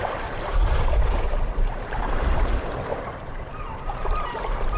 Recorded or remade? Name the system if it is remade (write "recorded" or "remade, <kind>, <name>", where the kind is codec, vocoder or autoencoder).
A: remade, vocoder, BigVGAN v2